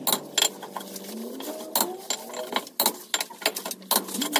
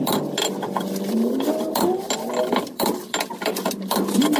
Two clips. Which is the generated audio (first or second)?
second